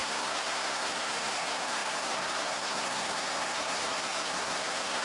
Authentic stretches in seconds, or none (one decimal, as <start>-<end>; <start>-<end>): none